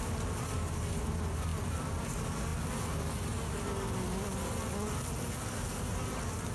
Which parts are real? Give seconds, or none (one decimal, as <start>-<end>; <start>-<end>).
0.0-6.5